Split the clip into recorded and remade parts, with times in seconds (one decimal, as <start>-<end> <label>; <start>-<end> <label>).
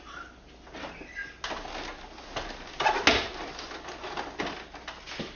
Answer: 0.0-5.4 recorded